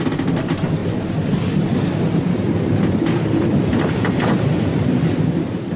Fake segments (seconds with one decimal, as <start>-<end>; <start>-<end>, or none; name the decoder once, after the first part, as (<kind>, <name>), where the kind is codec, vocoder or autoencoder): 0.0-5.8 (vocoder, BigVGAN v2)